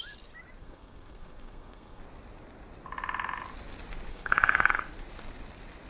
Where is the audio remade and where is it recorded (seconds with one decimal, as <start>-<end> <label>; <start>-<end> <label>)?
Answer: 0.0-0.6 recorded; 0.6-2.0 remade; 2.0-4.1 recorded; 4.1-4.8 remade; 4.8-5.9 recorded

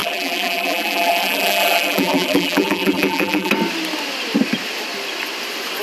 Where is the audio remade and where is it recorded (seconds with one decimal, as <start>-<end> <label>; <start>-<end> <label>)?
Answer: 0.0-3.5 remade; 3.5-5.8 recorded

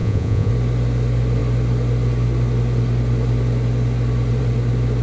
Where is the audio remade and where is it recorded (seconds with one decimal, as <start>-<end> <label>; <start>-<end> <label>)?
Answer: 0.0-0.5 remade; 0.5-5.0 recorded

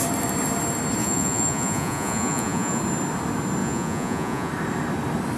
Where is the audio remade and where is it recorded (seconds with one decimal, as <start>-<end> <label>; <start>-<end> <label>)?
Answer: 0.0-1.0 recorded; 1.0-2.8 remade; 2.8-3.6 recorded; 3.6-4.5 remade; 4.5-5.4 recorded

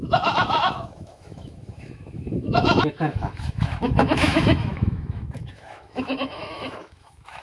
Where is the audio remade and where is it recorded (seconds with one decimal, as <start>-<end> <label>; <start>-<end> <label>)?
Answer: 0.0-7.4 remade

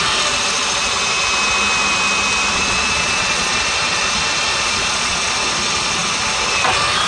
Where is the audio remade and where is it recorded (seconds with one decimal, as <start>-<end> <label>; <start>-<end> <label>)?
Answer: 0.0-2.5 recorded; 2.5-3.5 remade; 3.5-4.5 recorded; 4.5-5.3 remade; 5.3-7.1 recorded